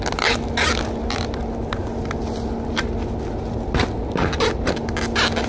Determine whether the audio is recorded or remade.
recorded